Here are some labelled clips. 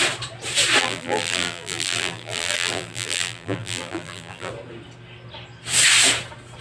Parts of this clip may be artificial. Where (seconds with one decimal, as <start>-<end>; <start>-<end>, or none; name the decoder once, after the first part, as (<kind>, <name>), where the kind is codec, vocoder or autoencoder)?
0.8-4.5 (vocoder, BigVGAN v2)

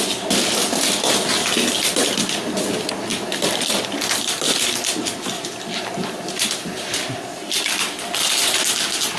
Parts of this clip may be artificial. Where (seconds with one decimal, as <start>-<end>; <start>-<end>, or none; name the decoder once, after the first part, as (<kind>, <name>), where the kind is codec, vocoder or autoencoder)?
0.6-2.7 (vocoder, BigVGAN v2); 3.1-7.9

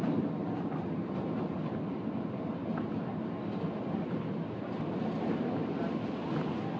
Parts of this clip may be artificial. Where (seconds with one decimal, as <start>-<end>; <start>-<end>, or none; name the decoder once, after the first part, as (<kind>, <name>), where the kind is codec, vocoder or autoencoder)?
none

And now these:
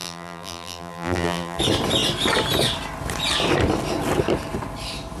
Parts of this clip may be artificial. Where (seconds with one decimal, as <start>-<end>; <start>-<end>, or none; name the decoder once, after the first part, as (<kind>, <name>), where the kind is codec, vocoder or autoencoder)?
0.0-1.6 (vocoder, BigVGAN v2)

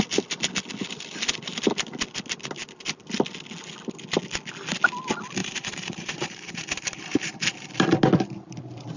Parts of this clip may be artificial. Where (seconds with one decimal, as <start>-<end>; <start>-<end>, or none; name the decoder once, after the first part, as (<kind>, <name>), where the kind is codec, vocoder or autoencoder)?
5.4-7.7 (vocoder, BigVGAN v2)